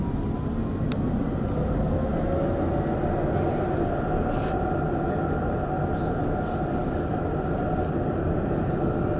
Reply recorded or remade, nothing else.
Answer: recorded